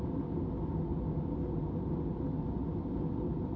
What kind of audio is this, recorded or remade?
recorded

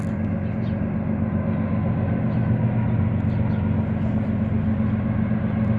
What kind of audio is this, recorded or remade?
recorded